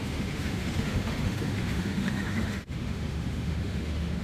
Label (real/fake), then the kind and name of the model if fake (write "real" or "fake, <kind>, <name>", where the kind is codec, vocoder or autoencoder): fake, autoencoder, DAC-VAE